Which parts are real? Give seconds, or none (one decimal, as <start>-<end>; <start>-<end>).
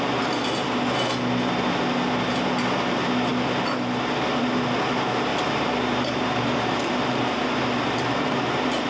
0.0-5.3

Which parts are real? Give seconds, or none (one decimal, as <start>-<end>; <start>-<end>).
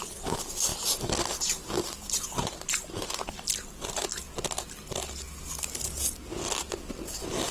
0.0-7.5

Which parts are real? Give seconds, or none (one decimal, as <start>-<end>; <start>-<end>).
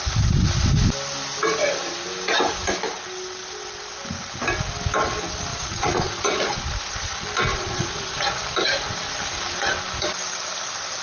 0.0-5.5; 6.6-7.5; 8.4-11.0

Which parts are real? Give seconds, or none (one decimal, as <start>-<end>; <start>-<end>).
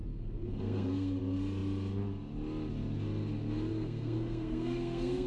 1.2-3.7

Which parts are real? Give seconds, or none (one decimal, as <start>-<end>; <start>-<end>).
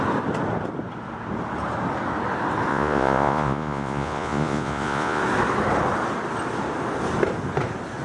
0.0-2.7; 5.2-8.0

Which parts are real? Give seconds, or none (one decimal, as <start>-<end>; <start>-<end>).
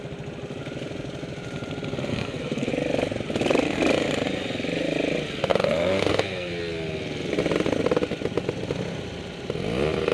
0.0-2.1; 2.7-5.5; 6.5-10.1